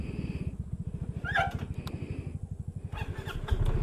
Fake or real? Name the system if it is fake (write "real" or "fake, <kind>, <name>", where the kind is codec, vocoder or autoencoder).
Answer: real